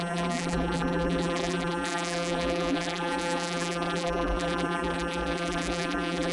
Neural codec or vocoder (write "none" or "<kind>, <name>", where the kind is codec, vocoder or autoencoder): vocoder, BigVGAN v2